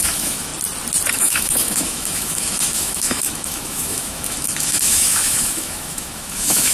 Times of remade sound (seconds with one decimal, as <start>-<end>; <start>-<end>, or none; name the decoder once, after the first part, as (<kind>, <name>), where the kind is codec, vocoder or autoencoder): 0.0-0.5 (autoencoder, DAC-VAE); 1.1-6.7